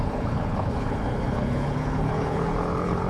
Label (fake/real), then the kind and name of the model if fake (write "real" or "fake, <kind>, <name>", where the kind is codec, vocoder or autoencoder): fake, codec, HILCodec